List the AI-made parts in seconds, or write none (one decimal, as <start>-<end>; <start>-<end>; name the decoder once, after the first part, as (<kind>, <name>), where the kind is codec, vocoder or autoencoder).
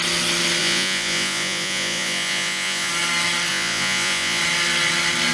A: 0.6-2.9 (vocoder, Vocos); 3.5-4.4